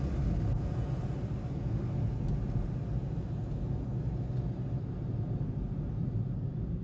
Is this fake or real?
real